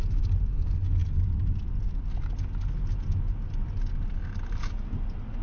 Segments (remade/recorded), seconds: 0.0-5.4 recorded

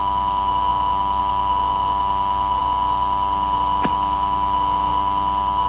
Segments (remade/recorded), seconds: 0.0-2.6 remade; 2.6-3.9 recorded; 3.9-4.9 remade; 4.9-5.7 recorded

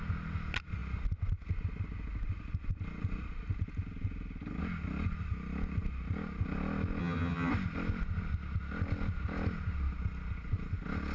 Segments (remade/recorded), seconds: 0.0-7.0 recorded; 7.0-7.5 remade; 7.5-11.1 recorded

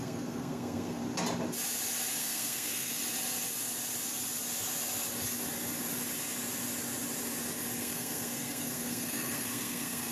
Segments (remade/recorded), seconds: 0.0-1.0 remade; 1.0-2.2 recorded; 2.2-3.0 remade; 3.0-7.8 recorded; 7.8-10.1 remade